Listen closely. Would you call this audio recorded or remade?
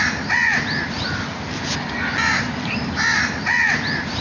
recorded